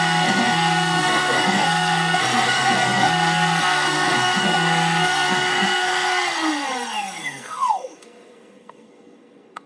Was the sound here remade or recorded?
remade